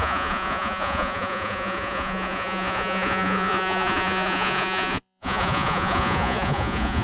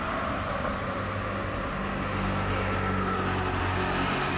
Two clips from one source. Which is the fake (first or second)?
first